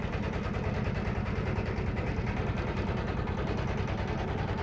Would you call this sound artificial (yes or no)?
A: no